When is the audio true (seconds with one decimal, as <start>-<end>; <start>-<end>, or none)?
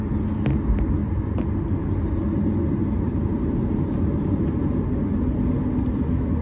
0.0-2.8; 4.7-6.4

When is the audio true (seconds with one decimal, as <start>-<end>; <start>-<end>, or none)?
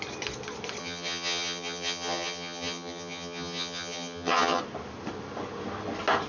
0.0-0.8; 4.6-6.3